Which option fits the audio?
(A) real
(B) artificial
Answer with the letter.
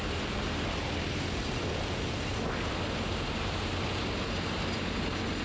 A